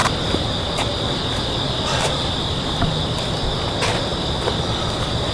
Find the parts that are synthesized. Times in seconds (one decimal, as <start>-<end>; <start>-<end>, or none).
none